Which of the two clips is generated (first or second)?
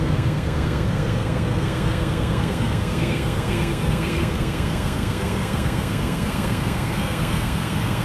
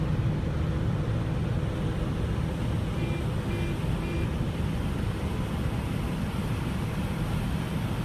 first